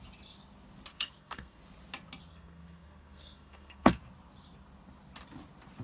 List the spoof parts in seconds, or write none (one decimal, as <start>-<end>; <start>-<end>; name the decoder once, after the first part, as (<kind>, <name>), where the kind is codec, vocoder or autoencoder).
0.9-1.6 (codec, SNAC); 2.3-4.0